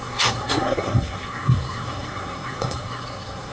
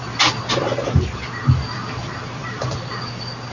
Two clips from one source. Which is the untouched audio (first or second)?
second